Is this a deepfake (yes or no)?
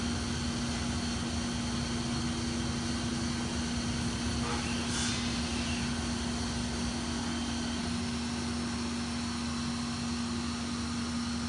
no